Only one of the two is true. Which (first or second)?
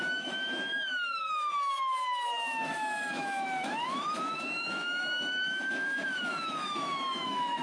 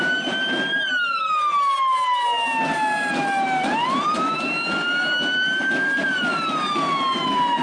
second